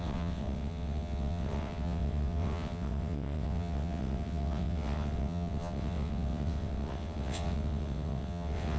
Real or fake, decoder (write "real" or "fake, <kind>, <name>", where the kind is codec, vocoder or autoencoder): fake, vocoder, WaveNeXt